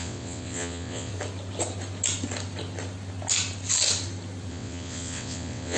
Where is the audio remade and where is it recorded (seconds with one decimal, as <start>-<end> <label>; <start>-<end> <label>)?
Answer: 0.0-1.1 remade; 1.1-4.5 recorded; 4.5-5.8 remade